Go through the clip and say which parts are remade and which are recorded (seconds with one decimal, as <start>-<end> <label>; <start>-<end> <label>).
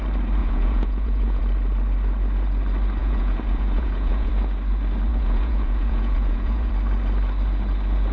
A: 0.0-0.4 recorded; 0.4-1.4 remade; 1.4-3.0 recorded; 3.0-4.3 remade; 4.3-5.1 recorded; 5.1-6.7 remade; 6.7-8.1 recorded